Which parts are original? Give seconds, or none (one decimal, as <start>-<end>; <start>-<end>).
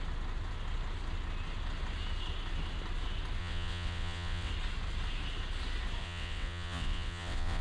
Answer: 0.0-3.4; 4.5-6.0